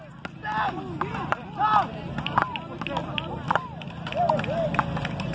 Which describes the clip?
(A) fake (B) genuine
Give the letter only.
B